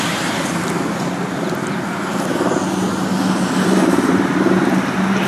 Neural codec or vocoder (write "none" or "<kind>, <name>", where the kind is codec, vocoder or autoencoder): none